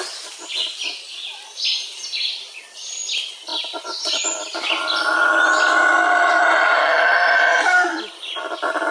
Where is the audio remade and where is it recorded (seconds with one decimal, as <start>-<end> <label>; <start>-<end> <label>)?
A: 0.0-6.3 recorded; 6.3-8.3 remade; 8.3-8.9 recorded